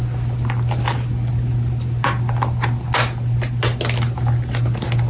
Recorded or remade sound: recorded